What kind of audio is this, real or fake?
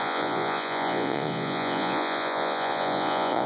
fake